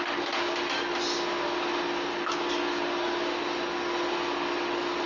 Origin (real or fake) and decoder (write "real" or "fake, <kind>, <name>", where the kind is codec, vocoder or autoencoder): real